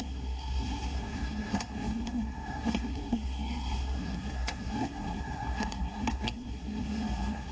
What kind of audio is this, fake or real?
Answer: fake